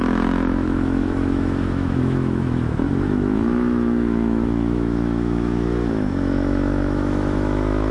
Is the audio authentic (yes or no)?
no